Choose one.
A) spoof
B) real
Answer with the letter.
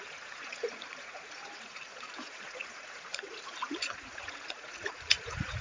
A